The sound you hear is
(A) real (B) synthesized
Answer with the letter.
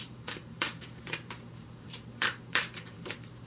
B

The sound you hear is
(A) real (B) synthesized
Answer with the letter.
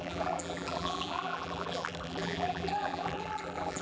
B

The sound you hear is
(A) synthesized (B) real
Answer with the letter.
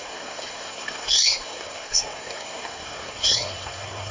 A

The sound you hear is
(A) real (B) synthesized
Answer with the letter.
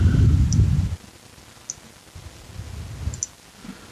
A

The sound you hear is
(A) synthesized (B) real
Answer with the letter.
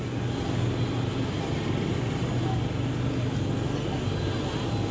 B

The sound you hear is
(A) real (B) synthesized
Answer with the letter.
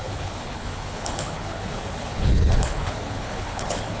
B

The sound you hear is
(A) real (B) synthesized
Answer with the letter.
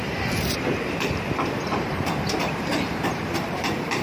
B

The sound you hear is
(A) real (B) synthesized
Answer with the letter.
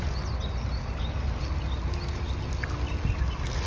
A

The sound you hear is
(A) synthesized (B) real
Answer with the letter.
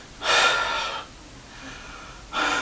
B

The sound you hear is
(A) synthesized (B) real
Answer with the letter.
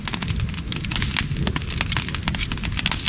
B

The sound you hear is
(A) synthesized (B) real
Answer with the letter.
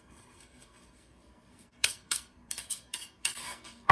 A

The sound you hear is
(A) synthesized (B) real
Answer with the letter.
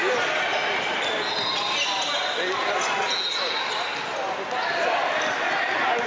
B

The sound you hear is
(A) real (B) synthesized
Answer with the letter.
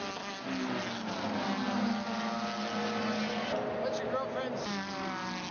A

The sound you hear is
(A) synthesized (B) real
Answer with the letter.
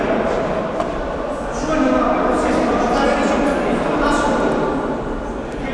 B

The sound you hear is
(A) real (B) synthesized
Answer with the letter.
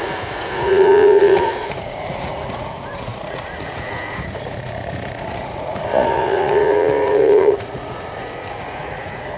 B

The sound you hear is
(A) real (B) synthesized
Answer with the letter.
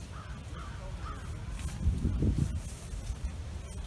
A